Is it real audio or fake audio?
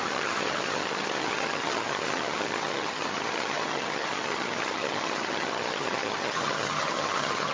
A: fake